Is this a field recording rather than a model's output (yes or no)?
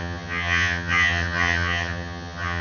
no